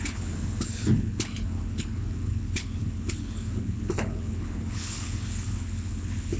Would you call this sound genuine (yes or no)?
no